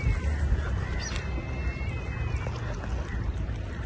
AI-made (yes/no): no